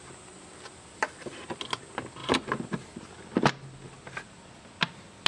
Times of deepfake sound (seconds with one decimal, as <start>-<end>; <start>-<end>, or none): none